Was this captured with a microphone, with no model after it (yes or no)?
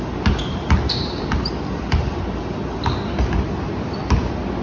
yes